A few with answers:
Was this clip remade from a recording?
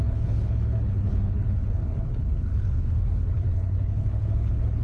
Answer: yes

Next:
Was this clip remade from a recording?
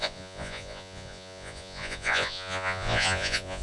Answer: yes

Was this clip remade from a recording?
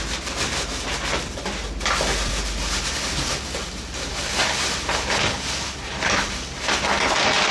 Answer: no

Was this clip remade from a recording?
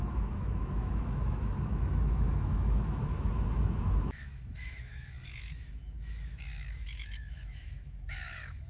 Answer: yes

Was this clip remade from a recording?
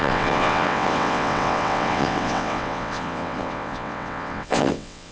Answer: yes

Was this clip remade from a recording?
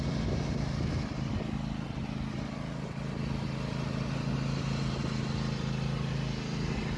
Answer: no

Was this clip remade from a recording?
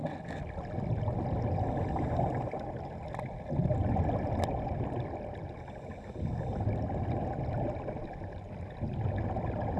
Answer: no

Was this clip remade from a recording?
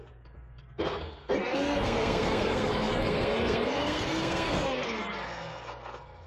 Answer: yes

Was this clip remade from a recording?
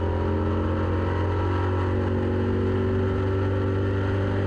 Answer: no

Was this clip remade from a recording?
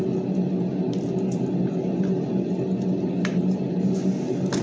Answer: no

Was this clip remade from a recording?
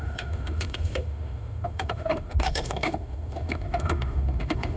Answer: yes